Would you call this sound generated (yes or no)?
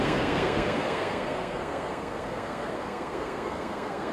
yes